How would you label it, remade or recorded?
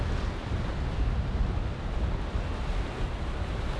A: recorded